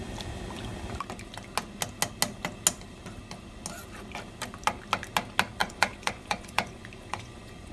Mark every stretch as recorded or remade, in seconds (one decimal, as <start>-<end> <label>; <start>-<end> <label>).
0.0-5.6 recorded; 5.6-7.7 remade